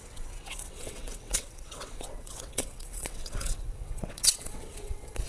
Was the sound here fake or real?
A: fake